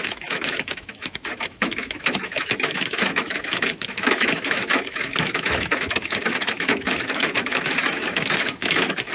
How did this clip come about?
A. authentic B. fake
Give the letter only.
B